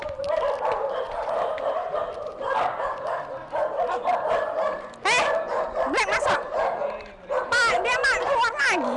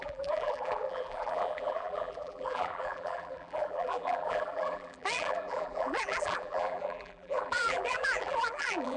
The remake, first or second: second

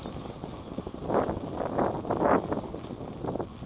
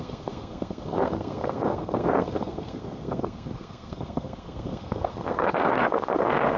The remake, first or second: second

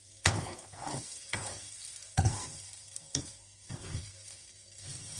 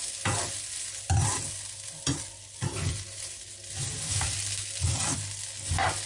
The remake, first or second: first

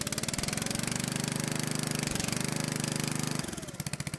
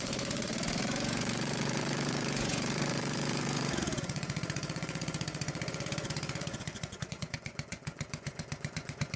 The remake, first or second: second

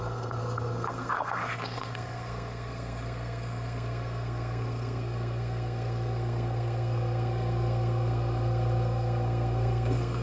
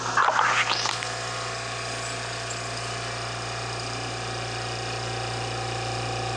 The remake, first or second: first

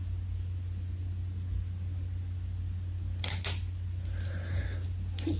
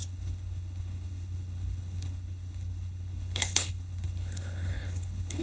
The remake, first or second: second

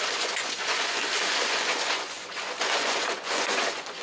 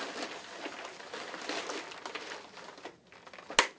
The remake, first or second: first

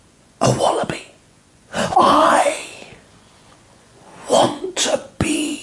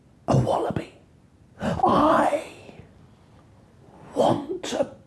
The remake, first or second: first